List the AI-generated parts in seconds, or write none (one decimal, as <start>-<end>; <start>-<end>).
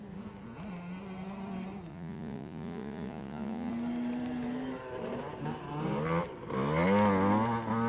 1.9-3.7